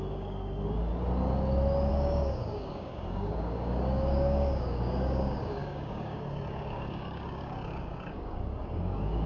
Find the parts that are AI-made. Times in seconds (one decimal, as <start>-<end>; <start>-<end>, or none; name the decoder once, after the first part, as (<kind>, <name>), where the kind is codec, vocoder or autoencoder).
0.0-0.9 (codec, DAC); 1.9-9.3